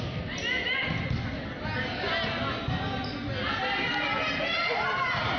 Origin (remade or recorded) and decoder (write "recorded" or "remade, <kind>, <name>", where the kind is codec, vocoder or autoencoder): recorded